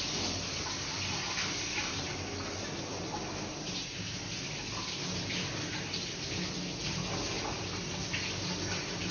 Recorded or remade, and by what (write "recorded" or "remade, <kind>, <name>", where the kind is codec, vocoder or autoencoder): recorded